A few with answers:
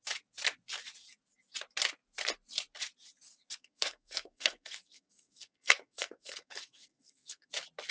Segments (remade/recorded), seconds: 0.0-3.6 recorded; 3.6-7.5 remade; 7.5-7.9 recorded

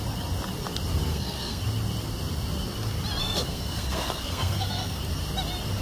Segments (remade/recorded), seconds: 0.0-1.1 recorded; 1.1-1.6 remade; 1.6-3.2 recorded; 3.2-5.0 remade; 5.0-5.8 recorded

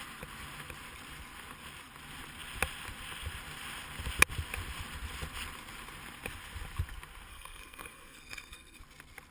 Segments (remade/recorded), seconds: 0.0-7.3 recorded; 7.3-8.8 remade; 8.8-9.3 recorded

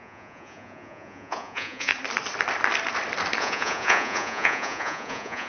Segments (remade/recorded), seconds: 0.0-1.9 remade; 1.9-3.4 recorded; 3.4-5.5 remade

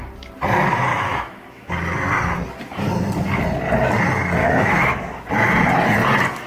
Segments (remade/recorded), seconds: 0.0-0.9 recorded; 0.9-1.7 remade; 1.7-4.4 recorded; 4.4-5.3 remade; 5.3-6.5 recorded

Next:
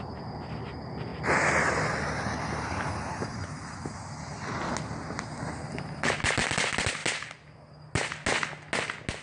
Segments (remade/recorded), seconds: 0.0-9.2 recorded

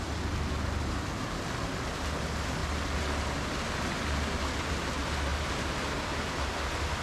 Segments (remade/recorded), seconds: 0.0-5.3 recorded; 5.3-6.5 remade; 6.5-7.0 recorded